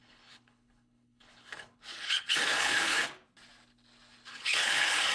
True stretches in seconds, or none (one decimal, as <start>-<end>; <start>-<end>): 3.1-4.3